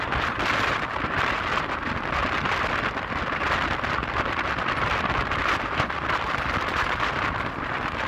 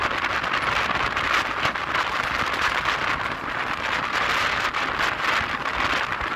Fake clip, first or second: first